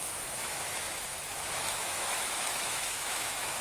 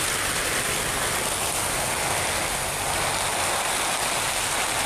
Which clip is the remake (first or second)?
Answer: first